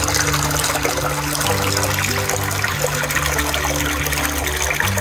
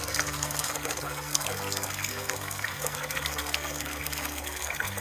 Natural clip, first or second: first